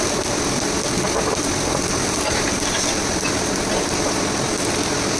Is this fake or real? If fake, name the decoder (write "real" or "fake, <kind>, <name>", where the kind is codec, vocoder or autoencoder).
real